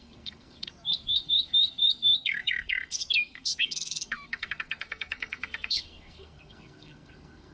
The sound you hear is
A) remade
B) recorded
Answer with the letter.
A